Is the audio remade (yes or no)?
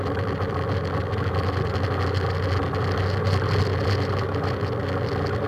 no